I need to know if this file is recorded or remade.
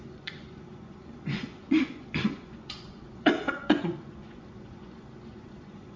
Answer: remade